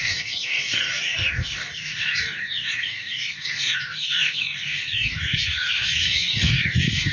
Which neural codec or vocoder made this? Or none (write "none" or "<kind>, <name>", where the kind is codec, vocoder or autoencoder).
codec, DAC